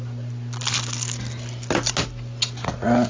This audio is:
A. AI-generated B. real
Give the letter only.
B